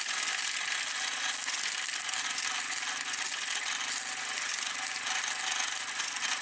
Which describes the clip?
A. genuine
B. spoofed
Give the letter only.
A